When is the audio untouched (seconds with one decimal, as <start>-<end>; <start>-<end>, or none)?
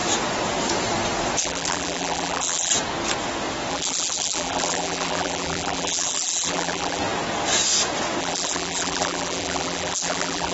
0.0-1.4; 2.7-3.7; 7.0-8.2